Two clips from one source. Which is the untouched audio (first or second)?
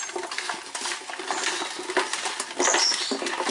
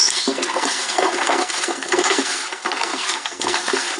first